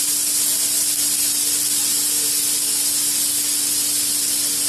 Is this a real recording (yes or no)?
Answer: yes